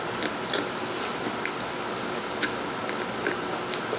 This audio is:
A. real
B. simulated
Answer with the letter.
A